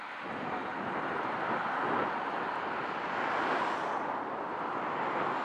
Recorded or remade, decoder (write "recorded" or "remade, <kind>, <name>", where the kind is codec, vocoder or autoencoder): recorded